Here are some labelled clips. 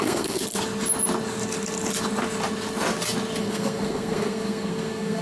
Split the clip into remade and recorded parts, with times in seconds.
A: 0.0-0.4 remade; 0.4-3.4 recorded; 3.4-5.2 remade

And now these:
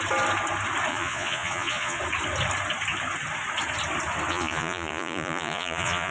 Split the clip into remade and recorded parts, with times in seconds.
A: 0.0-0.9 recorded; 0.9-2.0 remade; 2.0-4.3 recorded; 4.3-6.1 remade

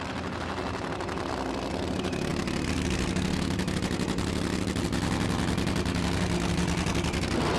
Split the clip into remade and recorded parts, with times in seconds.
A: 0.0-7.6 recorded

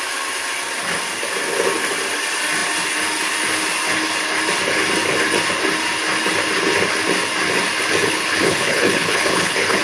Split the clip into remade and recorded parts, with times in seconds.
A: 0.0-8.0 recorded; 8.0-9.8 remade